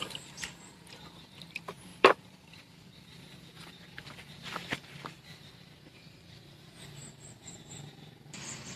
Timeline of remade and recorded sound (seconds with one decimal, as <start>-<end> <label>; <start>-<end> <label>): 0.0-7.0 remade; 7.0-8.3 recorded; 8.3-8.8 remade